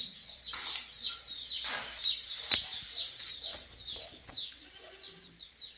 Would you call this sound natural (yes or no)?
no